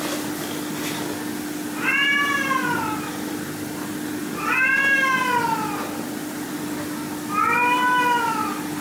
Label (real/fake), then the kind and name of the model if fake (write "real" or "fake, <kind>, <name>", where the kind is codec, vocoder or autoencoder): real